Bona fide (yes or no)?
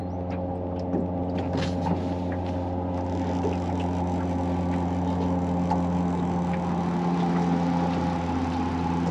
yes